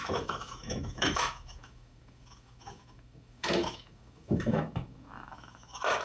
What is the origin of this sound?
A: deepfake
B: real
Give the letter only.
A